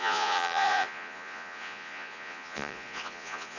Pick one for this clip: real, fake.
fake